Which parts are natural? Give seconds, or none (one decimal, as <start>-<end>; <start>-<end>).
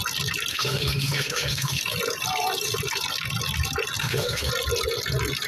0.0-0.5; 1.8-4.0; 4.5-5.5